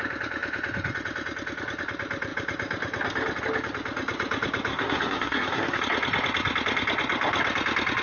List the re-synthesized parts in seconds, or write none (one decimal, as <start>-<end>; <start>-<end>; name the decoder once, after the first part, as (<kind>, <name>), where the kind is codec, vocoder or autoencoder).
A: 4.7-5.8 (codec, SNAC)